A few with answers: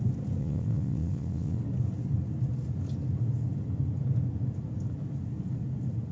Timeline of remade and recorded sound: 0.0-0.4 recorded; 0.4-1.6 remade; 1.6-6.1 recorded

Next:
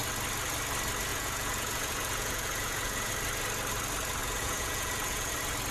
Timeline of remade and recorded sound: 0.0-1.1 recorded; 1.1-3.1 remade; 3.1-4.2 recorded; 4.2-5.3 remade; 5.3-5.7 recorded

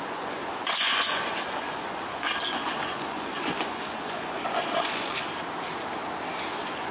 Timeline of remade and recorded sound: 0.0-5.1 remade; 5.1-6.5 recorded; 6.5-6.9 remade

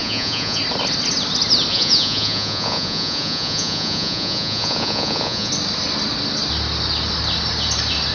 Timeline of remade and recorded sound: 0.0-0.6 remade; 0.6-1.7 recorded; 1.7-5.5 remade; 5.5-8.1 recorded

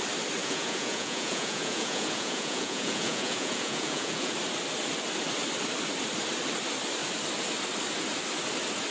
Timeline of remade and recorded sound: 0.0-0.4 recorded; 0.4-4.3 remade; 4.3-8.9 recorded